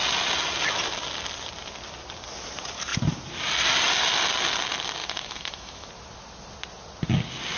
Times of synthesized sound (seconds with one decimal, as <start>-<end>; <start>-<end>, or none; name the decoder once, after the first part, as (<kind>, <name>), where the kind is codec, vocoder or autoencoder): 5.0-5.9 (autoencoder, DAC-VAE)

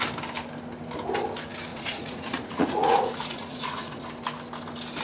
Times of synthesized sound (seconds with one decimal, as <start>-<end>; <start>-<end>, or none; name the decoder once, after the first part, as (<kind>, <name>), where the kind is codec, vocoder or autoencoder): 1.7-4.0 (vocoder, Vocos)